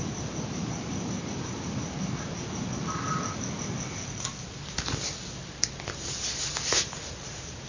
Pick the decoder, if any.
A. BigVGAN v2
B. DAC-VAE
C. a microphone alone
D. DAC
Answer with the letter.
C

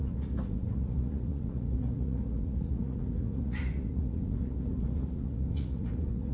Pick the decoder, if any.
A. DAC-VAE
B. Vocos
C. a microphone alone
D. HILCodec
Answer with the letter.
B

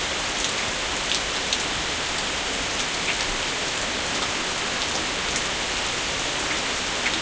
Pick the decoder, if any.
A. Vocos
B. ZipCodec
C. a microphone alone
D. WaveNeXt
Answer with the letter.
C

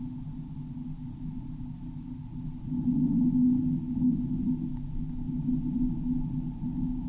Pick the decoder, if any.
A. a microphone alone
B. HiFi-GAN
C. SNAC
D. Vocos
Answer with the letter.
A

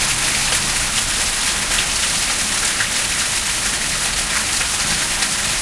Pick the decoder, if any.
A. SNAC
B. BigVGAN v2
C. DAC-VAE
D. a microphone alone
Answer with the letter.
D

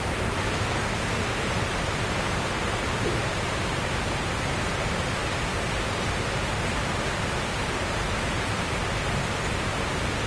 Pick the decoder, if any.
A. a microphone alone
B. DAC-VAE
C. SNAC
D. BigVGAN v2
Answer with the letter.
A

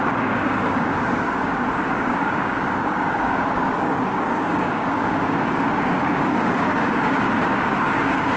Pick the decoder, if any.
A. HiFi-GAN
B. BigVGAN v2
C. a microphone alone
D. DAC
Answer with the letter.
D